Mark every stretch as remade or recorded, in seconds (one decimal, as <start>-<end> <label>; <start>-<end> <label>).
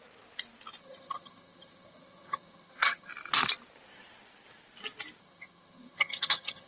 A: 0.0-0.8 recorded; 0.8-3.1 remade; 3.1-5.2 recorded; 5.2-6.7 remade